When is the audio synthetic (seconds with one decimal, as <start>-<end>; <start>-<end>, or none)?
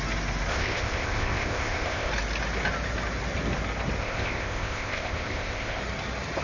0.5-2.1; 4.0-5.8